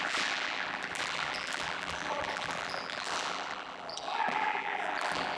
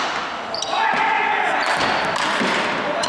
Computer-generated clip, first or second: first